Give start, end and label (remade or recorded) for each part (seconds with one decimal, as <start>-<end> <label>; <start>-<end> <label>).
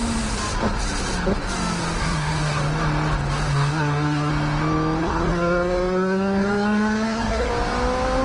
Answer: 0.0-2.0 recorded; 2.0-2.6 remade; 2.6-3.5 recorded; 3.5-4.3 remade; 4.3-5.0 recorded; 5.0-7.5 remade; 7.5-8.2 recorded